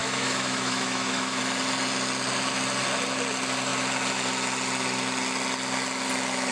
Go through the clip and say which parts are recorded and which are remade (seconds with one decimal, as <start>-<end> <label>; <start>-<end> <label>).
0.0-1.4 remade; 1.4-6.5 recorded